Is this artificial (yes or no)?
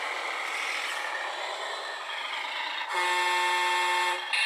no